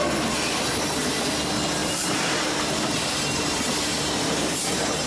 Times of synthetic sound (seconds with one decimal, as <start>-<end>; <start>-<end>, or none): 1.8-5.1